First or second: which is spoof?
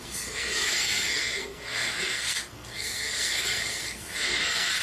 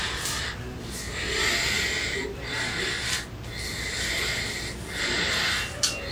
first